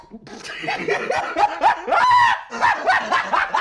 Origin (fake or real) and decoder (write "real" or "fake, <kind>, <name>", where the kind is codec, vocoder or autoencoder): real